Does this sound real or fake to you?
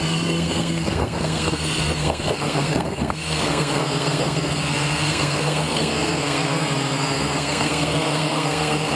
fake